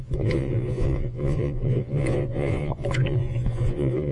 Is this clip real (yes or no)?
no